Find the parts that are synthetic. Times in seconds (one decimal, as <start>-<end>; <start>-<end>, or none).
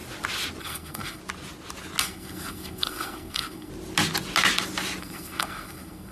0.6-1.2; 2.0-3.7; 5.0-6.1